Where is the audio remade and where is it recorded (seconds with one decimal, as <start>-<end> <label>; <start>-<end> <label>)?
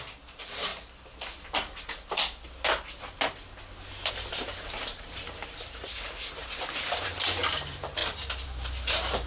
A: 0.0-0.7 remade; 0.7-4.1 recorded; 4.1-9.3 remade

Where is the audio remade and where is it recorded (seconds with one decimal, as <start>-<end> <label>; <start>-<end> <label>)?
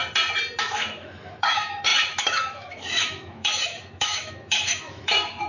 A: 0.0-0.6 recorded; 0.6-5.5 remade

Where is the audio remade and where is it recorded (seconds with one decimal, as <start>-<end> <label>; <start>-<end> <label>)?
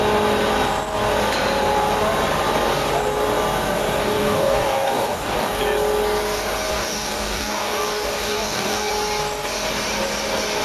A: 0.0-4.0 recorded; 4.0-5.6 remade; 5.6-6.7 recorded; 6.7-8.9 remade; 8.9-10.6 recorded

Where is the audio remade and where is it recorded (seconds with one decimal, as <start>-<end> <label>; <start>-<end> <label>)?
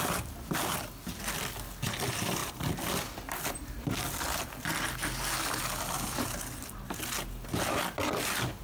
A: 0.0-8.6 recorded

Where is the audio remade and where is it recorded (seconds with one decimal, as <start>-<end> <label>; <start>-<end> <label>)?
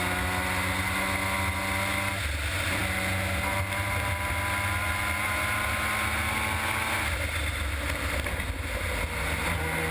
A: 0.0-9.9 recorded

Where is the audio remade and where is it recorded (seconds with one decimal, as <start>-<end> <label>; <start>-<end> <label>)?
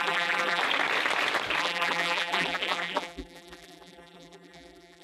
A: 0.0-0.6 remade; 0.6-1.6 recorded; 1.6-5.0 remade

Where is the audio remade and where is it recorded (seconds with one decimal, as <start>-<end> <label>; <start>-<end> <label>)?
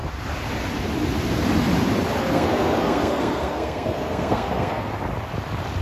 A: 0.0-2.2 recorded; 2.2-4.9 remade; 4.9-5.8 recorded